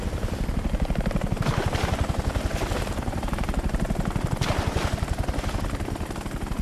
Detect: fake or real real